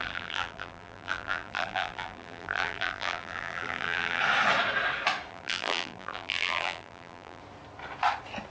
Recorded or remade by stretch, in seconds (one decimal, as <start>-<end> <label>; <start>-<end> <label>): 0.0-4.2 remade; 4.2-5.3 recorded; 5.3-7.4 remade; 7.4-8.5 recorded